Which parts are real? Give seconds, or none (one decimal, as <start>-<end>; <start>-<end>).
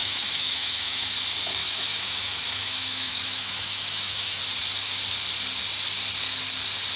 1.0-1.6; 4.4-7.0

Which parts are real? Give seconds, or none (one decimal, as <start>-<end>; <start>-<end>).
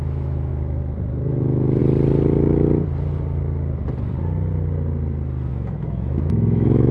0.5-1.1; 1.8-5.5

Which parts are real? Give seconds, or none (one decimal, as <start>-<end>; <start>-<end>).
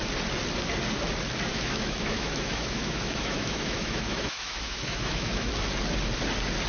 0.0-1.5; 5.5-6.7